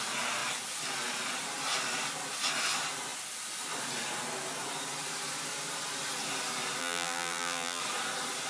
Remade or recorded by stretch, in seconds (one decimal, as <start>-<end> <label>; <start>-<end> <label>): 0.0-6.8 recorded; 6.8-7.8 remade; 7.8-8.5 recorded